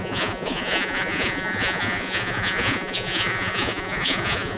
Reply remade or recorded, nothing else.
remade